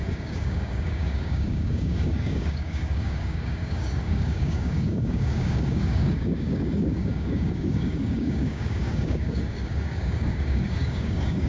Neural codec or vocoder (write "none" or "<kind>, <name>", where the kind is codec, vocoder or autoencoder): codec, DAC